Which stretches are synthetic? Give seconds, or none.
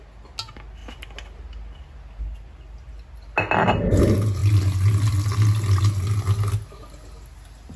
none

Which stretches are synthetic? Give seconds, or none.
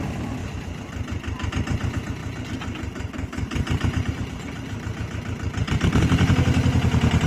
0.4-1.5 (vocoder, BigVGAN v2); 2.2-6.0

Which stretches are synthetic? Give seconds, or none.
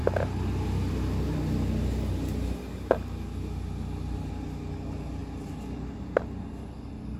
5.2-6.2 (vocoder, BigVGAN v2)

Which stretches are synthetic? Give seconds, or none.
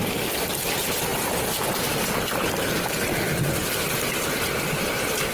none